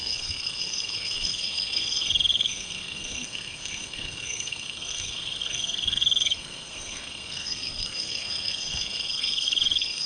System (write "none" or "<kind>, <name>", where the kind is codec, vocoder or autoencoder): codec, SNAC